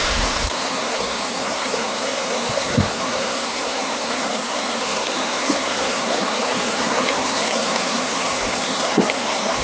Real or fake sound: fake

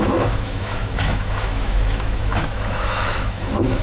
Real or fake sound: fake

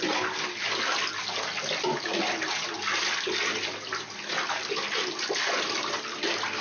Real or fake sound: real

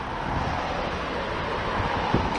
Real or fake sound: real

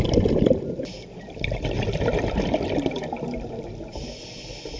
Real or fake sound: real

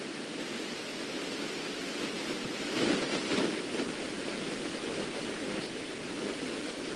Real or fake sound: real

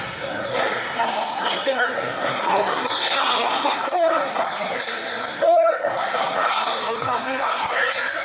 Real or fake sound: fake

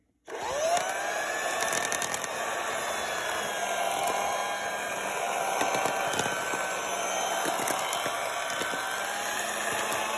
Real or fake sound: real